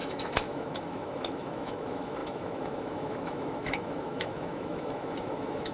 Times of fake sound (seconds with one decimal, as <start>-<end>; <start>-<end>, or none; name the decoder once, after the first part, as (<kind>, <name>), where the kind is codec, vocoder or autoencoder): 0.0-5.7 (autoencoder, DAC-VAE)

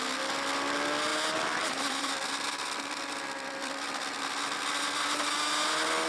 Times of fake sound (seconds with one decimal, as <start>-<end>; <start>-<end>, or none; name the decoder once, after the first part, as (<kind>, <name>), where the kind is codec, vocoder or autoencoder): 1.1-4.8 (vocoder, BigVGAN v2)